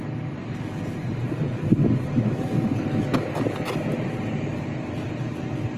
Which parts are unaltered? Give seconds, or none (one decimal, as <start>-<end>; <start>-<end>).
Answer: 0.0-5.8